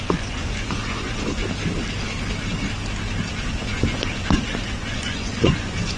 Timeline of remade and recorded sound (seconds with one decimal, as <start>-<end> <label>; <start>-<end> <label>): 0.0-1.4 remade; 1.4-3.3 recorded; 3.3-6.0 remade